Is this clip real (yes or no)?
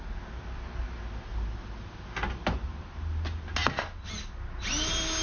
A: yes